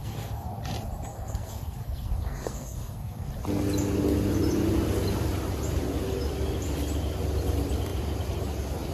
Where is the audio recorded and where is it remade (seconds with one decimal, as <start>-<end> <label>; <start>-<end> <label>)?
0.0-0.5 remade; 0.5-1.1 recorded; 1.1-3.3 remade; 3.3-8.9 recorded